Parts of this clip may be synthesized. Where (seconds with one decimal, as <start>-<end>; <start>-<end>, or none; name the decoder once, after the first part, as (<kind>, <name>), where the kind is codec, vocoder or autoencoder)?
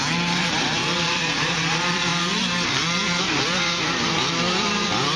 0.0-2.1 (vocoder, BigVGAN v2); 3.2-5.2